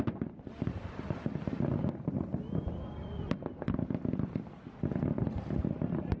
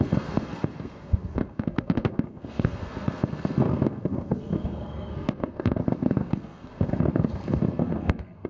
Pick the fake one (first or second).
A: second